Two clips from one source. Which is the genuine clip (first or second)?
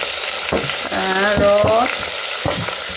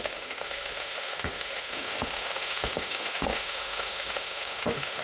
first